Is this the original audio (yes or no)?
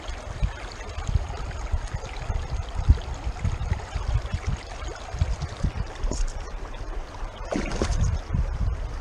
yes